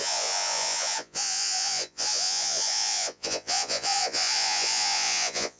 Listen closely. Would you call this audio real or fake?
fake